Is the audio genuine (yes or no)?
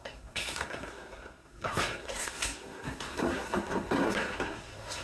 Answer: no